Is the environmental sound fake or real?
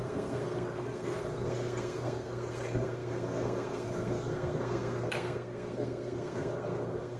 fake